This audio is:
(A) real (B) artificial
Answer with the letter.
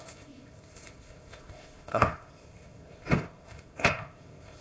B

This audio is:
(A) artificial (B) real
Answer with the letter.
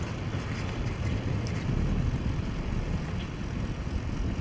B